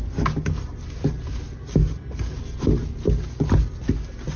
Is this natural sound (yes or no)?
yes